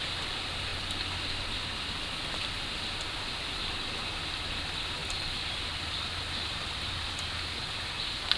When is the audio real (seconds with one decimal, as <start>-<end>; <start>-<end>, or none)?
0.0-5.0; 7.2-8.4

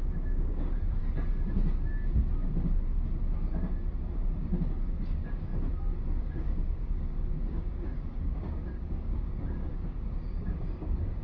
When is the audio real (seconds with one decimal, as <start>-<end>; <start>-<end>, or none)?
1.0-4.6; 5.5-6.2

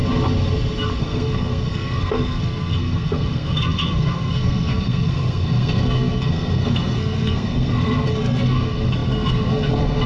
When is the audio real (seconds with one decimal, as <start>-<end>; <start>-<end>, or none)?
0.0-1.0